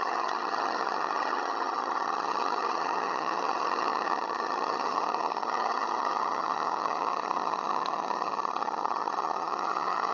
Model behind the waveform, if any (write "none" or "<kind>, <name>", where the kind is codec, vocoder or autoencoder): vocoder, HiFi-GAN